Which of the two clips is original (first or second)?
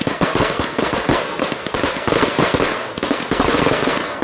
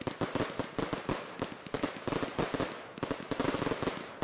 second